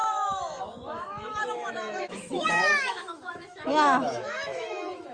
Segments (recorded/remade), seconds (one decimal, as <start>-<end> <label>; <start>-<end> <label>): 0.0-5.1 remade